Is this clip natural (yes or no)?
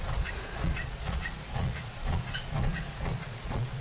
no